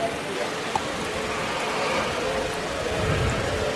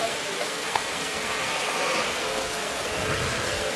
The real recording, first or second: first